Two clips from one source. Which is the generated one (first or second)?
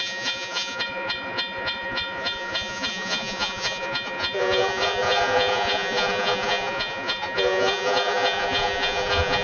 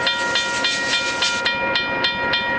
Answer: first